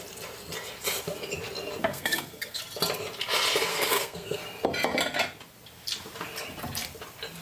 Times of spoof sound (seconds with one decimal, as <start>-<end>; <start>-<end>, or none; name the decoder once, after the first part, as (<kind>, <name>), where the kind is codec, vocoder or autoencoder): 1.8-2.6 (codec, SNAC); 3.7-4.4